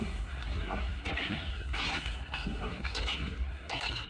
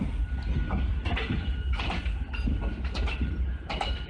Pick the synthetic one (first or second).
first